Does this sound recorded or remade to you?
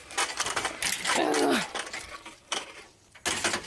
recorded